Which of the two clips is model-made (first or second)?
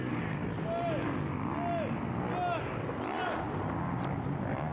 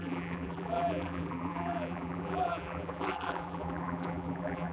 second